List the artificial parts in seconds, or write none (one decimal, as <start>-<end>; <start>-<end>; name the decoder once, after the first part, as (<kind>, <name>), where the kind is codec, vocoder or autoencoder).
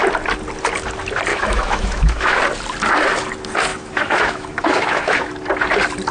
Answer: 1.3-2.4 (autoencoder, DAC-VAE); 3.7-5.3